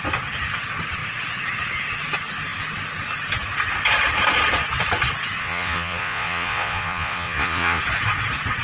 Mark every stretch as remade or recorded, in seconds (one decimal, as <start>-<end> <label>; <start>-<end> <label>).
0.0-5.4 recorded; 5.4-7.8 remade; 7.8-8.6 recorded